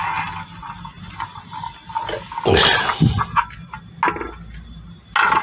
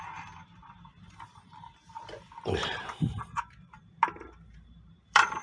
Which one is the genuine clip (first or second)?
first